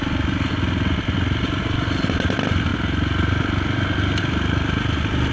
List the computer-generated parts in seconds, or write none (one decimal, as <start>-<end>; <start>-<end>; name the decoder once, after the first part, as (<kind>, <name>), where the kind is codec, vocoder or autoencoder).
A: none